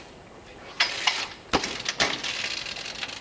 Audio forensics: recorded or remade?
recorded